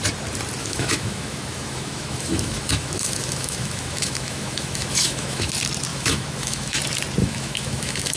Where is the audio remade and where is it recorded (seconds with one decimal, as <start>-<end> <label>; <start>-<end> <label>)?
0.0-0.6 recorded; 0.6-5.5 remade; 5.5-5.9 recorded; 5.9-6.8 remade; 6.8-7.2 recorded; 7.2-8.2 remade